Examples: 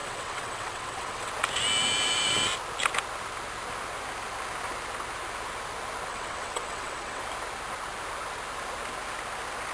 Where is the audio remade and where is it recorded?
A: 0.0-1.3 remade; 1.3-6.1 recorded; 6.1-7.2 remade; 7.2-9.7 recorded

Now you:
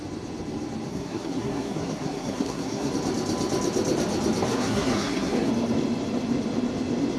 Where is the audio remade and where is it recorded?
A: 0.0-0.9 recorded; 0.9-2.9 remade; 2.9-4.5 recorded; 4.5-5.5 remade; 5.5-7.2 recorded

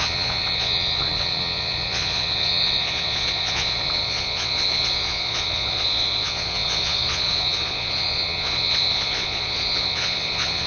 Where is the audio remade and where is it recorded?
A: 0.0-10.7 remade

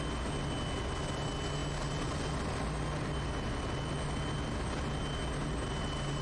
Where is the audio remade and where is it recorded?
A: 0.0-6.2 recorded

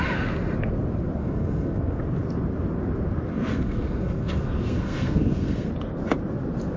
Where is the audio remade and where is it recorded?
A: 0.0-1.2 recorded; 1.2-2.0 remade; 2.0-3.3 recorded; 3.3-5.7 remade; 5.7-6.8 recorded

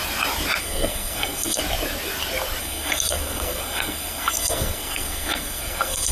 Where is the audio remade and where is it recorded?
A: 0.0-0.6 recorded; 0.6-1.6 remade; 1.6-2.6 recorded; 2.6-6.1 remade